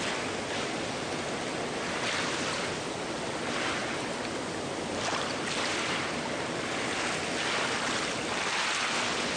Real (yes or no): yes